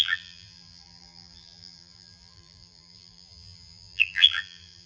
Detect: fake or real fake